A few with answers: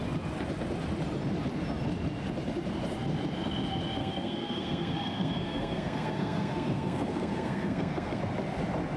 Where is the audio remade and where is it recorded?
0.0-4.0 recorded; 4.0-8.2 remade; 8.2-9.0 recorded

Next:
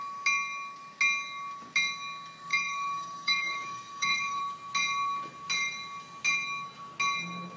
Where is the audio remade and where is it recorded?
0.0-2.5 recorded; 2.5-4.4 remade; 4.4-7.6 recorded

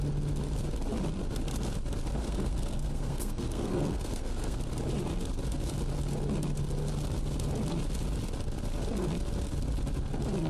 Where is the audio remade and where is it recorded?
0.0-2.2 recorded; 2.2-4.6 remade; 4.6-10.5 recorded

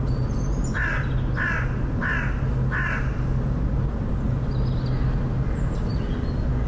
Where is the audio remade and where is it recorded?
0.0-6.7 recorded

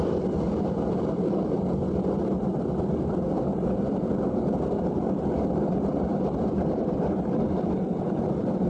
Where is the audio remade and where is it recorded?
0.0-8.7 recorded

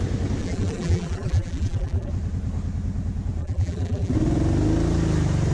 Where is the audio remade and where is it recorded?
0.0-0.4 recorded; 0.4-2.1 remade; 2.1-3.4 recorded; 3.4-4.1 remade; 4.1-5.5 recorded